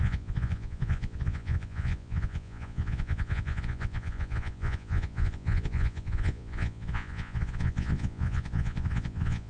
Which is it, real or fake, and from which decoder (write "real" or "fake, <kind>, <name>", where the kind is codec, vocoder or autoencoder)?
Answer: fake, vocoder, Vocos